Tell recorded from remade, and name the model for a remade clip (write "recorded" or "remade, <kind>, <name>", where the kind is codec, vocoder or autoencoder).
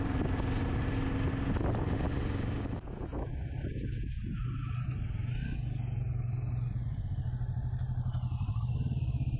recorded